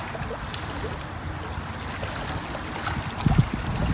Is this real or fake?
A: real